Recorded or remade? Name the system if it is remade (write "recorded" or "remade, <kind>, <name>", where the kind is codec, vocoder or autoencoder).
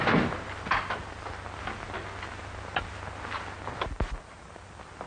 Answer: recorded